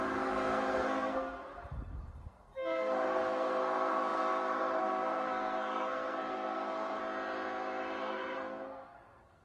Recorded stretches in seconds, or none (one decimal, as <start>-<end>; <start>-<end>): 7.0-8.0